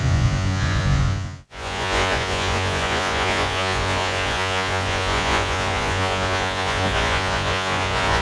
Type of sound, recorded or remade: remade